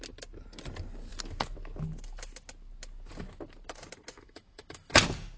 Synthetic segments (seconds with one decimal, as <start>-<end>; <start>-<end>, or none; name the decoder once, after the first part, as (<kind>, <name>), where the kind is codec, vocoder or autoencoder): 4.1-4.9 (autoencoder, DAC-VAE)